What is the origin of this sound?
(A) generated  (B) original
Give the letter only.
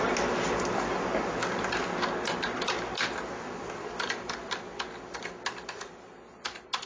B